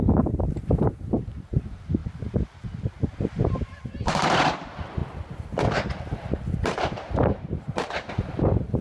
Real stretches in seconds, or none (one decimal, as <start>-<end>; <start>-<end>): 5.0-6.5